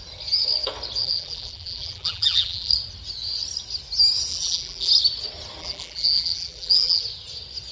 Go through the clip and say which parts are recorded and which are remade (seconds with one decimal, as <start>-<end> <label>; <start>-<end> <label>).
0.0-1.0 recorded; 1.0-2.7 remade; 2.7-4.3 recorded; 4.3-4.9 remade; 4.9-5.6 recorded; 5.6-7.0 remade; 7.0-7.7 recorded